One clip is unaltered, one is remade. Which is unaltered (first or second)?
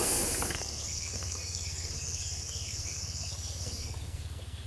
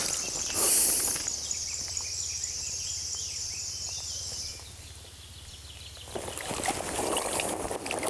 second